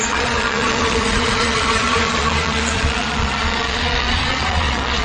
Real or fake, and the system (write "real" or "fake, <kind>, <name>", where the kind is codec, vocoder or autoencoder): fake, vocoder, Vocos